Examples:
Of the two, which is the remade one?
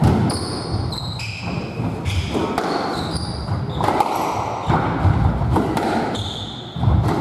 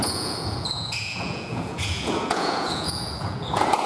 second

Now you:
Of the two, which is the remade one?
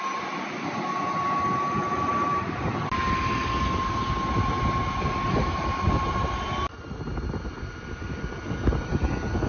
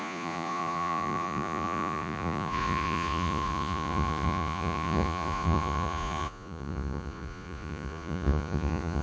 second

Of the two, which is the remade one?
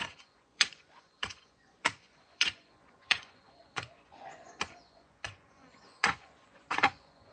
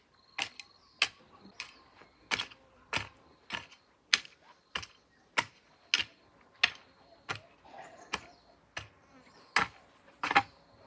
first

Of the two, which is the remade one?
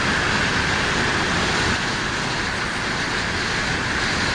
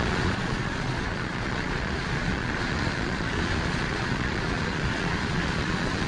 second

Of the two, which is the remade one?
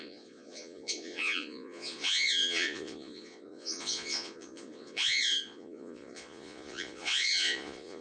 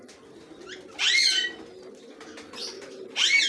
first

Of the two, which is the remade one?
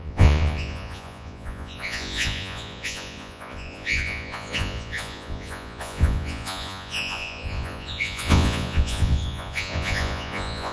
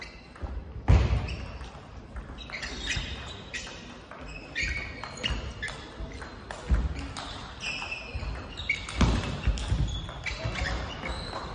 first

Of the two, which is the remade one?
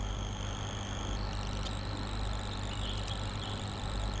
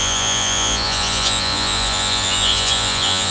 second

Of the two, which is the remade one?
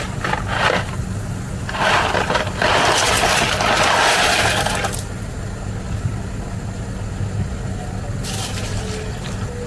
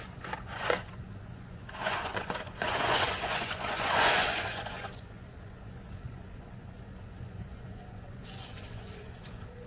second